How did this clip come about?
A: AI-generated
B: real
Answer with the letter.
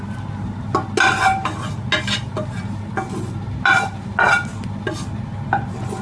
B